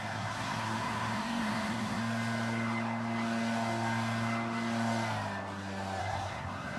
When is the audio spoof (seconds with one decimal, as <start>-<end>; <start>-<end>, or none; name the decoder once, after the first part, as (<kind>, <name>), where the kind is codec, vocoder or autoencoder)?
0.0-2.0 (codec, SNAC); 6.0-6.8